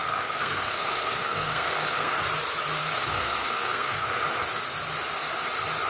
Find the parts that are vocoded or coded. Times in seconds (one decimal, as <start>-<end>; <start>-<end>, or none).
0.0-2.1; 2.8-4.2